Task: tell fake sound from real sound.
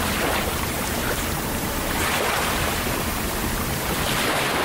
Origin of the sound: fake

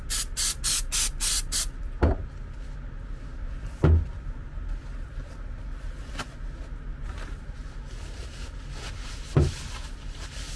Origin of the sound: real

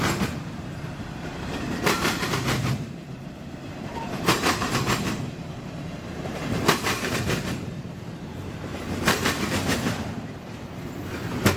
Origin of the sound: fake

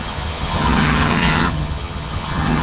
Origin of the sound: fake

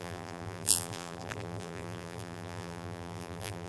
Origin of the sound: fake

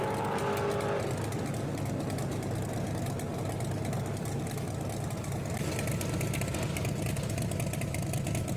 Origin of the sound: real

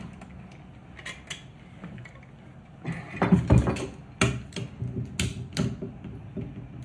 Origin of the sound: real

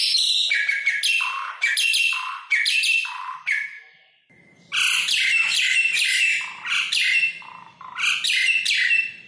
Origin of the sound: real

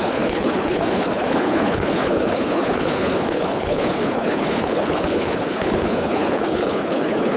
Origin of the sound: fake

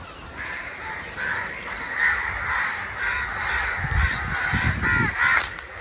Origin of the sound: real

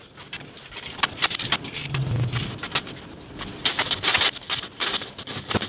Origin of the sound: real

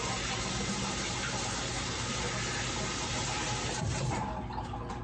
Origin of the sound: real